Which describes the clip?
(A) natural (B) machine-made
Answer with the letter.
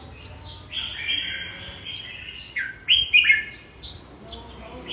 A